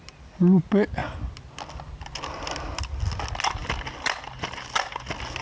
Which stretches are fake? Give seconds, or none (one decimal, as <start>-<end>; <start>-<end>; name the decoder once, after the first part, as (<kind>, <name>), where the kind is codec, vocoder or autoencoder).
none